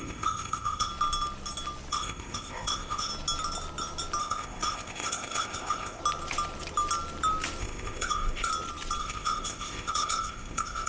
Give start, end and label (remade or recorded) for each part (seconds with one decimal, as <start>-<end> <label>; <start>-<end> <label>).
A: 0.0-0.9 remade; 0.9-1.9 recorded; 1.9-3.1 remade; 3.1-4.2 recorded; 4.2-6.0 remade; 6.0-7.6 recorded; 7.6-8.5 remade; 8.5-9.0 recorded; 9.0-10.9 remade